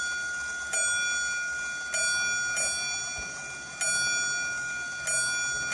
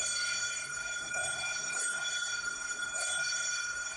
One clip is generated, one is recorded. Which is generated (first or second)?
second